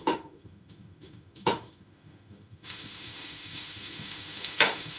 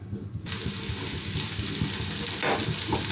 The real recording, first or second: second